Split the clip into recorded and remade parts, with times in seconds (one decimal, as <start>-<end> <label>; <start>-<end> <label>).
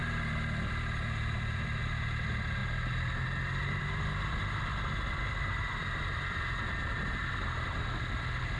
0.0-1.8 remade; 1.8-2.6 recorded; 2.6-3.8 remade; 3.8-5.8 recorded; 5.8-7.4 remade; 7.4-8.6 recorded